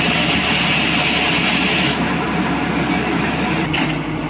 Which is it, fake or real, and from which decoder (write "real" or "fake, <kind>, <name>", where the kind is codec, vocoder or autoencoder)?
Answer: real